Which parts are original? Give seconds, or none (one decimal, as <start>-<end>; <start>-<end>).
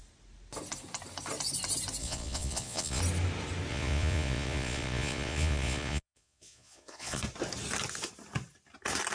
0.0-2.0; 3.0-3.7; 7.2-9.1